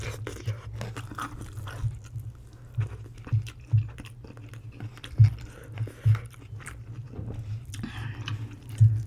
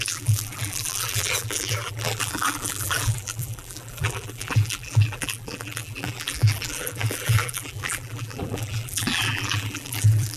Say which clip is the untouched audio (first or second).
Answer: first